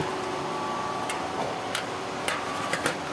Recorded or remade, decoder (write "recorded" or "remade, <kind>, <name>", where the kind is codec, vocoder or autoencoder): recorded